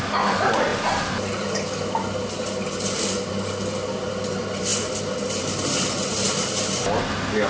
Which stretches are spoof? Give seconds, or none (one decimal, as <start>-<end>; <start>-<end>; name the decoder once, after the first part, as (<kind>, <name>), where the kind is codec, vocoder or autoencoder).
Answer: none